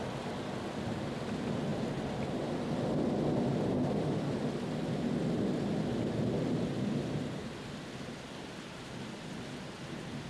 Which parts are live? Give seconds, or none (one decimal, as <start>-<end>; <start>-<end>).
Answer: 0.0-10.3